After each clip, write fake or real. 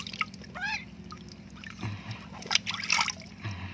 real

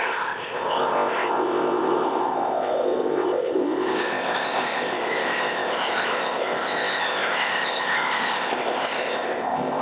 fake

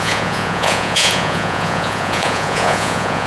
fake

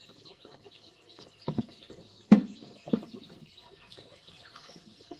fake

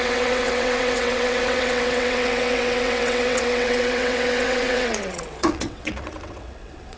fake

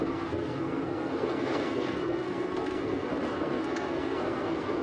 fake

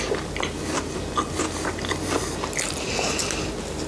real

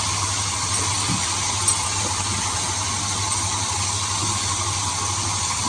real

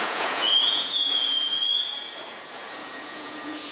fake